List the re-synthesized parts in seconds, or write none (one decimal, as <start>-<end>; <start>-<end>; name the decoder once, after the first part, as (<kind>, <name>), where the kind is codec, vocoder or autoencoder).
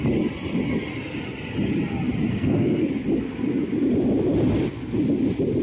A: 2.3-2.9 (codec, SNAC)